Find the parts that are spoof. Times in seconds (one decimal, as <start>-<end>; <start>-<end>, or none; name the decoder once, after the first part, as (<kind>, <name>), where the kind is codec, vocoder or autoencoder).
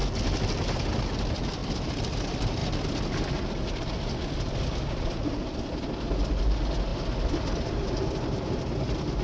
none